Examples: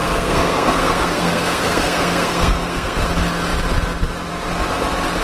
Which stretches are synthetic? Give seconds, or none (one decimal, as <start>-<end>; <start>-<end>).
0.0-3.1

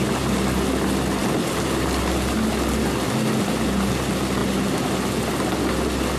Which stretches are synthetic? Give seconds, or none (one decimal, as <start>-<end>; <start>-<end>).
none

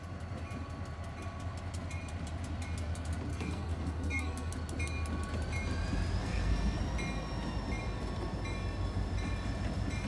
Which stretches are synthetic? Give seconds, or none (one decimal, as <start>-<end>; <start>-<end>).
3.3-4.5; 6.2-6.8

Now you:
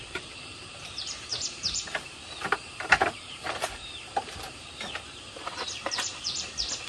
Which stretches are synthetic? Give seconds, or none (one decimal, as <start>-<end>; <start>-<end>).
0.0-6.9